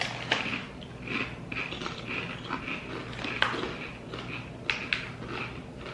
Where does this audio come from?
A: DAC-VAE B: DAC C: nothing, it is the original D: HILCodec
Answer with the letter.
C